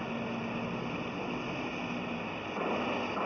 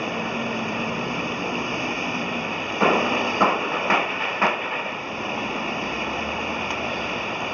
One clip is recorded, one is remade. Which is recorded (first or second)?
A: first